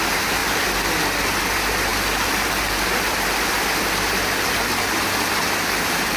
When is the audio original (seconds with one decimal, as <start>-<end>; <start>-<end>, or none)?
1.9-5.6

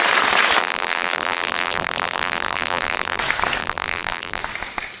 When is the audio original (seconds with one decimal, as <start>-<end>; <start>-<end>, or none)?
0.0-0.6; 3.2-3.6; 4.4-5.0

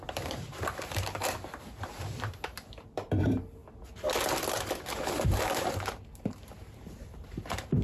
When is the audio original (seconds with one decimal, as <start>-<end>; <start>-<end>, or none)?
3.6-4.8

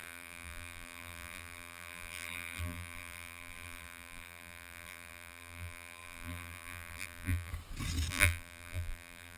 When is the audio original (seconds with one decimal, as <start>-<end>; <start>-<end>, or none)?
7.5-8.1

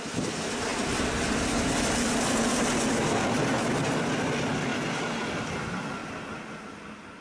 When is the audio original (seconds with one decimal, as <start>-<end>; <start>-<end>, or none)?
4.7-5.3; 6.0-7.2